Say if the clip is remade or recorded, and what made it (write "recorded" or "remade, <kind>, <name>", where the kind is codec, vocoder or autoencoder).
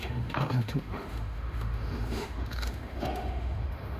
remade, autoencoder, DAC-VAE